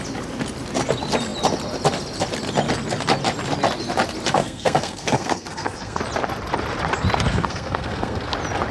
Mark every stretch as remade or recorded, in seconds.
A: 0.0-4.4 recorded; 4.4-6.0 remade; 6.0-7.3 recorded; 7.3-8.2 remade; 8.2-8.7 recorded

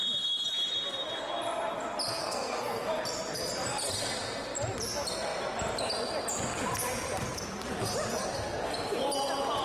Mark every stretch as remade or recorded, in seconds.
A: 0.0-2.2 recorded; 2.2-2.9 remade; 2.9-9.6 recorded